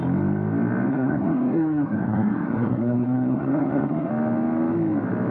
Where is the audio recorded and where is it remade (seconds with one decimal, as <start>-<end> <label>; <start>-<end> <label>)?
0.0-0.9 recorded; 0.9-4.1 remade; 4.1-5.3 recorded